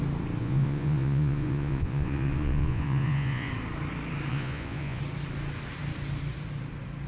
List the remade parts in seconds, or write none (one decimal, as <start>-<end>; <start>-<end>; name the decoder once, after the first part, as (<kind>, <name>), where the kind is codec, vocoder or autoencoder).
0.4-3.5 (vocoder, Vocos); 4.3-5.0

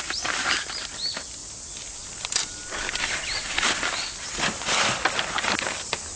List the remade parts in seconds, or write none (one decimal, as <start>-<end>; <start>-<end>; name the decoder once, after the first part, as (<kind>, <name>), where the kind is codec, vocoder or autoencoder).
none

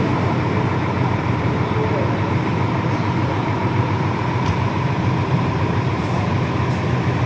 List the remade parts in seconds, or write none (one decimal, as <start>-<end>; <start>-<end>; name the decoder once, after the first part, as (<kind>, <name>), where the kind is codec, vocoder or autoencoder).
none

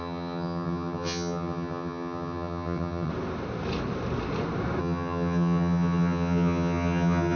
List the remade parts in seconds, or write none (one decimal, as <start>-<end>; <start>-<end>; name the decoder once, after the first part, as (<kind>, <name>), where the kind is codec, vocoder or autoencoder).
0.0-3.1 (vocoder, HiFi-GAN); 4.8-7.4

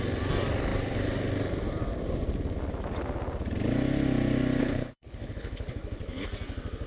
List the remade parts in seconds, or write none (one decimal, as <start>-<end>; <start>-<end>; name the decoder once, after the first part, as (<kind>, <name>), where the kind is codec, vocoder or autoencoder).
4.6-6.3 (codec, HILCodec)

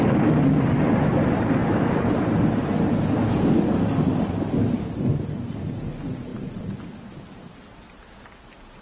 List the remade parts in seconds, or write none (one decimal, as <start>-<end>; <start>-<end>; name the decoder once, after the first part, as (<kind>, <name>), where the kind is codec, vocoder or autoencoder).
none